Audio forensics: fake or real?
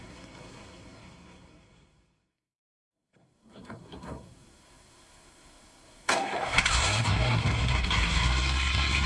fake